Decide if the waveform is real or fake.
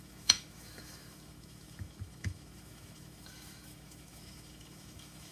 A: fake